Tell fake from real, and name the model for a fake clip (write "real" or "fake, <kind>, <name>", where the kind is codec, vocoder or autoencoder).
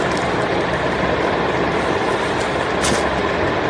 real